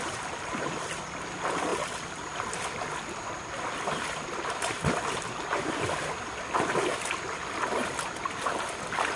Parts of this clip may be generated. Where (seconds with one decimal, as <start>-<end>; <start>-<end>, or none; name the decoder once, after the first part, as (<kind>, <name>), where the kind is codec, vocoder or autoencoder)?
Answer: none